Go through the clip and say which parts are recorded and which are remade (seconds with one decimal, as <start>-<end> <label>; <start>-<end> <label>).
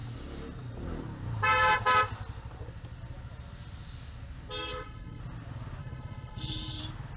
0.0-4.7 recorded; 4.7-5.2 remade; 5.2-5.8 recorded; 5.8-6.8 remade; 6.8-7.2 recorded